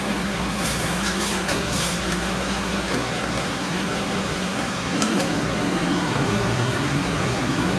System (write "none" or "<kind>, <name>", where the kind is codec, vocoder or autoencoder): codec, SNAC